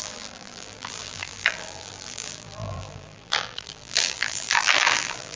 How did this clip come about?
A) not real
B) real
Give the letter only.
A